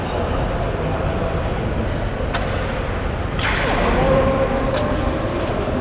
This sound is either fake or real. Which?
real